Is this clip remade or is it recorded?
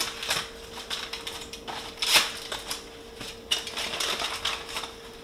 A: recorded